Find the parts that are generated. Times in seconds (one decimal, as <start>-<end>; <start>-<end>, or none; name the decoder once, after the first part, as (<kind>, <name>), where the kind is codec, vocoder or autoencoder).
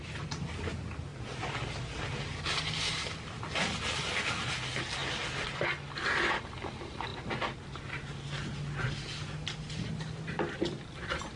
none